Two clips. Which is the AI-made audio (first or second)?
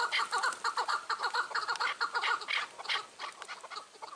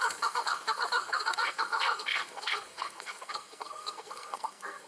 second